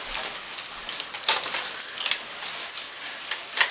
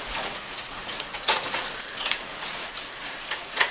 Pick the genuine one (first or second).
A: first